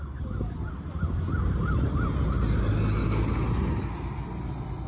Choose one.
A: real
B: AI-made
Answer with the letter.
A